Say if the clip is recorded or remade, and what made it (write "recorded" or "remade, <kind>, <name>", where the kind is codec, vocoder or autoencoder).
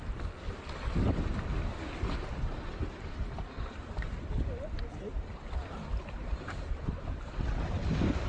recorded